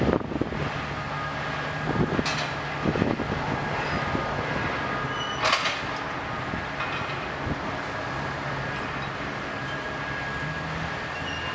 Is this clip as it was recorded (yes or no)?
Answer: yes